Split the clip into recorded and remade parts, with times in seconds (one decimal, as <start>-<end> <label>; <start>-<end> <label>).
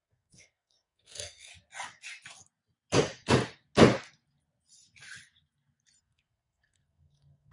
0.0-1.5 remade; 1.5-6.0 recorded; 6.0-7.5 remade